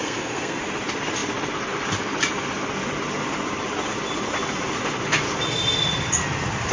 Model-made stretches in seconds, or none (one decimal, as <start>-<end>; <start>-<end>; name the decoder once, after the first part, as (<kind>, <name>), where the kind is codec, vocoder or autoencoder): 0.0-0.6 (codec, SNAC)

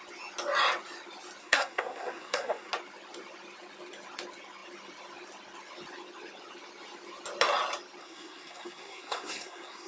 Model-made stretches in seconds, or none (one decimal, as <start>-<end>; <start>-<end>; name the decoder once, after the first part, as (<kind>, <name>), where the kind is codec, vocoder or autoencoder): 1.4-2.7 (codec, SNAC); 8.0-9.9

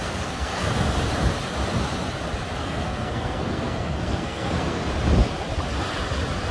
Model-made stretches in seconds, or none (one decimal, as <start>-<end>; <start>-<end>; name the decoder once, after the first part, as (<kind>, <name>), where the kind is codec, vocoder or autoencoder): 0.0-0.7 (codec, SNAC); 2.6-4.8